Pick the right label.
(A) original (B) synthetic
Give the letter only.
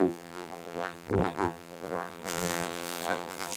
B